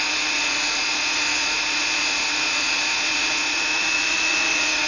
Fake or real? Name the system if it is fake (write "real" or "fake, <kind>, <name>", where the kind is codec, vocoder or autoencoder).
fake, vocoder, Vocos